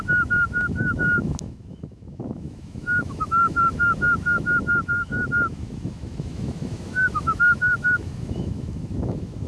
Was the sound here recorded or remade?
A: remade